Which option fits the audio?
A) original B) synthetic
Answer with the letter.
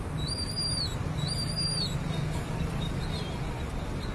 A